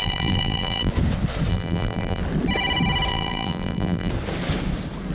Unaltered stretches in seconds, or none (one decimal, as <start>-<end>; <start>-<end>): 0.9-1.5; 2.2-3.1; 4.1-5.1